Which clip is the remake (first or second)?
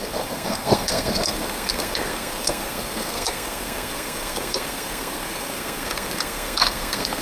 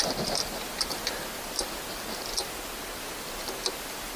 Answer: first